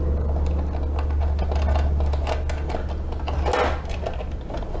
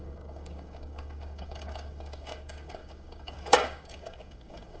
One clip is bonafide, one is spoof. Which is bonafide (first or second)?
first